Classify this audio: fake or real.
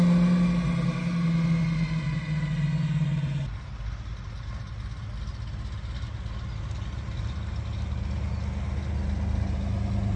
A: real